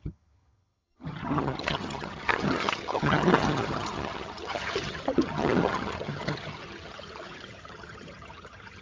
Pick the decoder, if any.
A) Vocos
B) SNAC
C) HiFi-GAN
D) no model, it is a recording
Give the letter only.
C